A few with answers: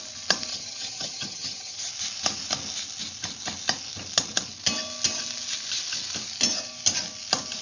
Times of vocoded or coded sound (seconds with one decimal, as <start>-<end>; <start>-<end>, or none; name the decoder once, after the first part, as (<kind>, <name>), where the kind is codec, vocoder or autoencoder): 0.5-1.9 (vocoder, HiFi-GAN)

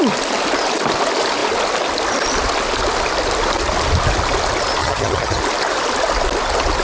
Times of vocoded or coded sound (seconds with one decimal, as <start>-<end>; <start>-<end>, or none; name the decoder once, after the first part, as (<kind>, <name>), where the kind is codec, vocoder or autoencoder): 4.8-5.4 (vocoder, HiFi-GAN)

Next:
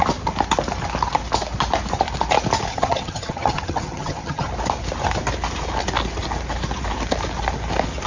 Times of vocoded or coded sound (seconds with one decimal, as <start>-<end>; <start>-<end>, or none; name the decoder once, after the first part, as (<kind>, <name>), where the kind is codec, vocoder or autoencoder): 2.7-4.5 (vocoder, HiFi-GAN)

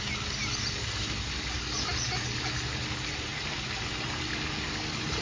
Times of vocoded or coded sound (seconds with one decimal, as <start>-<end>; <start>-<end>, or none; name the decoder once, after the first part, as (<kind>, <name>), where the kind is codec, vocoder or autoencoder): none

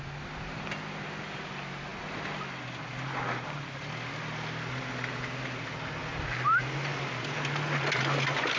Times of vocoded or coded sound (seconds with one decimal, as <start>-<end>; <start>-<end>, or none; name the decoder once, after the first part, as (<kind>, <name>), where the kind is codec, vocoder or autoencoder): none

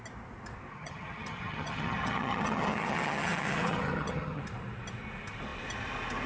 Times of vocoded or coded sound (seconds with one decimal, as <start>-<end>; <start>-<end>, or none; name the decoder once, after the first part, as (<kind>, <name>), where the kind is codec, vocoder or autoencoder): 0.7-4.4 (vocoder, HiFi-GAN)

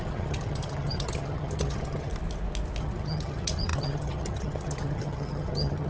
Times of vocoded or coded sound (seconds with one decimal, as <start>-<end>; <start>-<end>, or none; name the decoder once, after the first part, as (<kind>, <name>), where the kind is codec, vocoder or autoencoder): 0.0-2.1 (vocoder, HiFi-GAN); 2.8-5.9